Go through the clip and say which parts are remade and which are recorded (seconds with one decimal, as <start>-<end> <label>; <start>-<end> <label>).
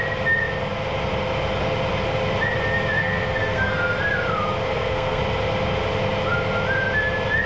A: 0.0-3.0 recorded; 3.0-4.0 remade; 4.0-4.7 recorded; 4.7-5.2 remade; 5.2-7.5 recorded